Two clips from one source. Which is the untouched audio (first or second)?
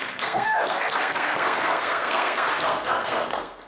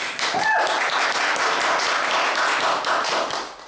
second